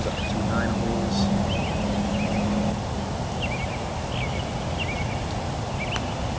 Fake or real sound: real